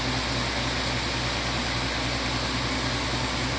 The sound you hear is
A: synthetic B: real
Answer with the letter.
B